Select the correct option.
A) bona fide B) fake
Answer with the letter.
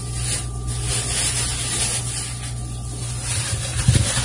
A